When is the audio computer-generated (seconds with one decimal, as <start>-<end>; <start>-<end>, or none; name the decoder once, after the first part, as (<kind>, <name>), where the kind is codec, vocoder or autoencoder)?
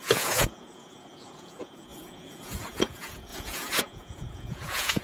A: 0.0-5.0 (vocoder, Vocos)